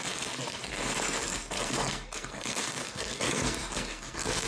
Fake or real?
fake